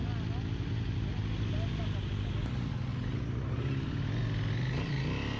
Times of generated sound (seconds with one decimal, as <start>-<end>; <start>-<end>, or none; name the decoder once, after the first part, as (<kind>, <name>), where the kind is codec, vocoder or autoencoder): none